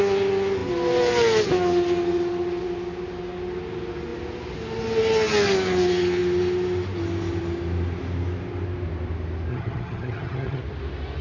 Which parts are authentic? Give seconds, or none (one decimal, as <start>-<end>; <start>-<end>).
0.0-9.5; 10.6-11.2